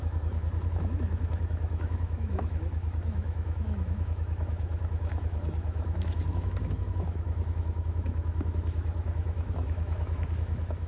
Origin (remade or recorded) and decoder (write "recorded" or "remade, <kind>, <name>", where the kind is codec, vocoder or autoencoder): remade, autoencoder, DAC-VAE